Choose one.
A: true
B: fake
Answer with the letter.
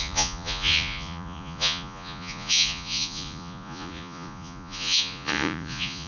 B